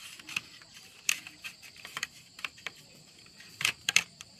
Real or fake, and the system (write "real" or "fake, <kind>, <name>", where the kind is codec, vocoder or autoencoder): fake, vocoder, BigVGAN v2